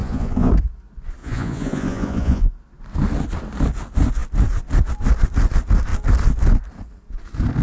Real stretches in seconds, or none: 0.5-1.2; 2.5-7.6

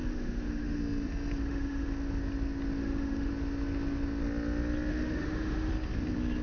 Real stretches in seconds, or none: 0.8-1.4; 1.9-2.8; 3.3-4.9; 5.7-6.4

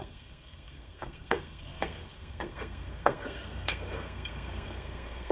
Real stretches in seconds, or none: none

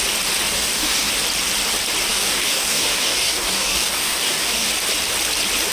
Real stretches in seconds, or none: 0.0-0.5; 1.1-2.1; 4.7-5.7